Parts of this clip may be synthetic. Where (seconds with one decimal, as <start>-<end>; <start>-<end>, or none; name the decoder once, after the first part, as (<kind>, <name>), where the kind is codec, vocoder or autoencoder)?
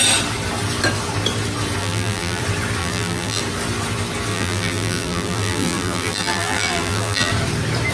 1.8-2.4 (vocoder, BigVGAN v2); 2.8-3.4; 4.3-7.3